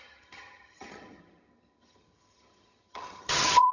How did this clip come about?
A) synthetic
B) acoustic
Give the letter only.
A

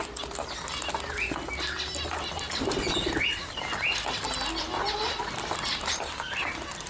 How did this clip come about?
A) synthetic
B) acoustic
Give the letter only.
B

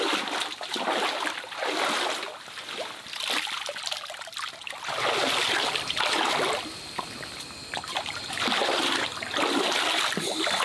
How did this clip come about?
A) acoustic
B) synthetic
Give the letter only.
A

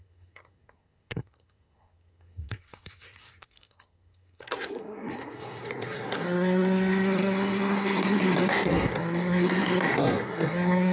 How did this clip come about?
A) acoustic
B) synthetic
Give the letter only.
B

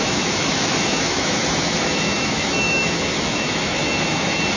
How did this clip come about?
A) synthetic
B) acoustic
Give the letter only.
A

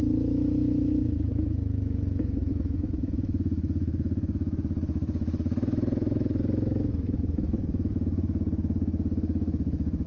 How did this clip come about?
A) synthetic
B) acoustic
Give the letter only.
A